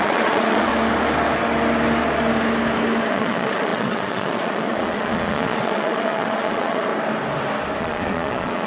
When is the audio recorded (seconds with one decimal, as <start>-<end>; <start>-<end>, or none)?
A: 0.7-3.1; 6.9-7.8